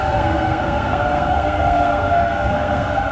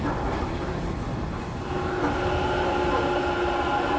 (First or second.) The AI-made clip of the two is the first